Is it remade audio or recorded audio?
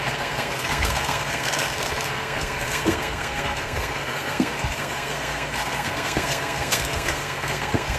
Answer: remade